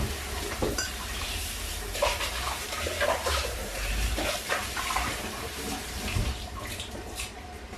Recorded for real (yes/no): no